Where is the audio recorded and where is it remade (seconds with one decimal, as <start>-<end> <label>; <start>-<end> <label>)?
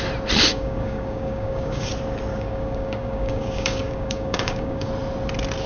0.0-0.5 recorded; 0.5-1.9 remade; 1.9-2.3 recorded; 2.3-4.9 remade; 4.9-5.7 recorded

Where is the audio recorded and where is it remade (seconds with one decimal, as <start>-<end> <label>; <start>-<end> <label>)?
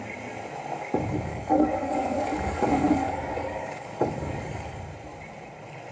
0.0-1.3 recorded; 1.3-4.8 remade; 4.8-5.9 recorded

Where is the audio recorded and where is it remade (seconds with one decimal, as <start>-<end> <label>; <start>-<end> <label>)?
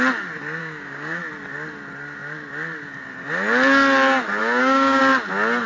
0.0-0.6 recorded; 0.6-1.2 remade; 1.2-4.4 recorded; 4.4-5.0 remade; 5.0-5.7 recorded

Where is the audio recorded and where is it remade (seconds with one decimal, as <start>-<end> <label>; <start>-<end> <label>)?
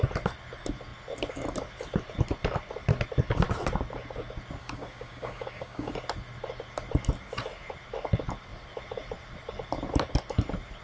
0.0-4.6 recorded; 4.6-5.9 remade; 5.9-10.8 recorded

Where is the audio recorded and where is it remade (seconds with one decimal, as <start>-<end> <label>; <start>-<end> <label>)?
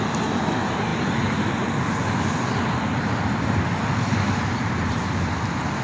0.0-5.8 recorded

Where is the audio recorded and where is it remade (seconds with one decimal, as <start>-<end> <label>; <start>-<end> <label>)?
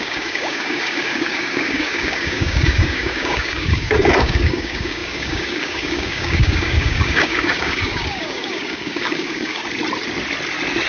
0.0-9.6 remade; 9.6-10.9 recorded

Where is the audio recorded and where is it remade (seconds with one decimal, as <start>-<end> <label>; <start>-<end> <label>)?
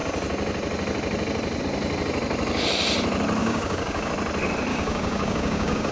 0.0-3.4 recorded; 3.4-4.1 remade; 4.1-4.7 recorded; 4.7-5.9 remade